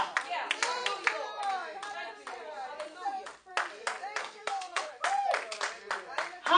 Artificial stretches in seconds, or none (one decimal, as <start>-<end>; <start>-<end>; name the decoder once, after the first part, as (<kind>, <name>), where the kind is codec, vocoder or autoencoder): 4.2-4.9 (codec, SNAC)